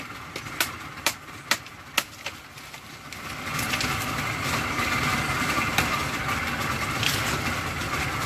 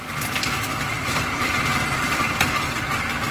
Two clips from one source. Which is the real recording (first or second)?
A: second